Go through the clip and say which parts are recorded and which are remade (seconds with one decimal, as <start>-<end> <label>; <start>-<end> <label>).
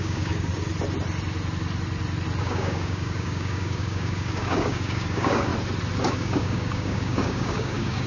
0.0-0.5 remade; 0.5-2.4 recorded; 2.4-5.5 remade; 5.5-6.0 recorded; 6.0-8.1 remade